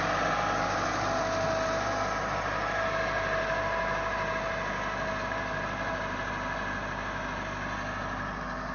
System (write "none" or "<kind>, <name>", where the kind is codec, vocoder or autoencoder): none